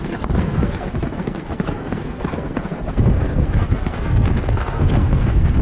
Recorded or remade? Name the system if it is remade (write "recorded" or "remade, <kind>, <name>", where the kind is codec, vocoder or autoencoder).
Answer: remade, codec, SNAC